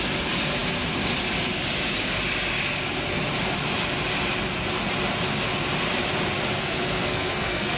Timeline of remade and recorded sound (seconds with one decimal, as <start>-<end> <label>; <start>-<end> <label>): 0.0-6.6 recorded; 6.6-7.8 remade